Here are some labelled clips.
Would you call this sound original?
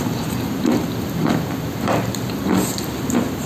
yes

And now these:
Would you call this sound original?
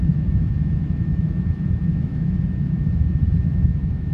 no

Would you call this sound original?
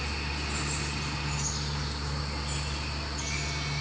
yes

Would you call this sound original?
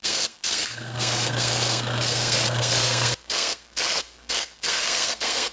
no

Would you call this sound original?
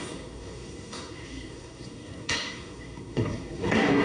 no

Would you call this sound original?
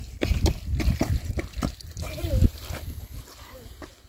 yes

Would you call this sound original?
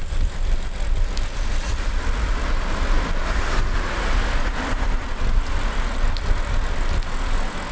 yes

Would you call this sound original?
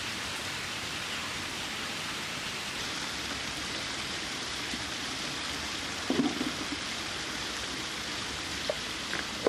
no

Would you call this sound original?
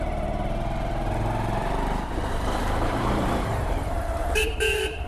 no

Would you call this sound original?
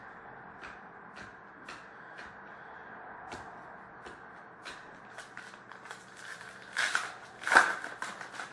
yes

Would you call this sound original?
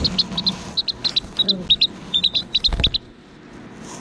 yes